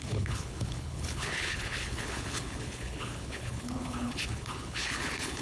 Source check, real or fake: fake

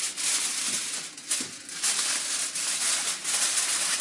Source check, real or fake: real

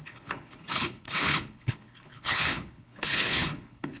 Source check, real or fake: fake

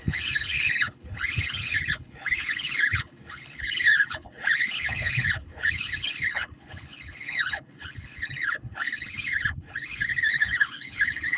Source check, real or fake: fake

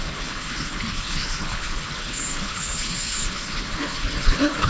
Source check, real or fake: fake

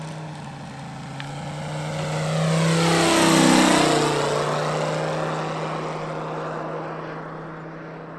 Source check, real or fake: real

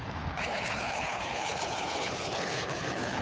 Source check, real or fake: fake